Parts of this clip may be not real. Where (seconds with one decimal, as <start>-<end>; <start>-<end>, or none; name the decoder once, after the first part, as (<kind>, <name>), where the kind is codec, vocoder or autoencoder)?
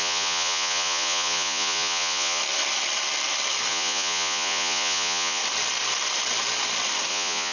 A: 0.0-2.4 (vocoder, Vocos); 3.7-5.4; 7.1-7.5